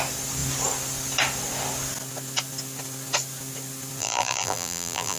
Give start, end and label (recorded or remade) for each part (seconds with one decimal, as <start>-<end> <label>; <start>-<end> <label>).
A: 0.0-4.0 recorded; 4.0-5.2 remade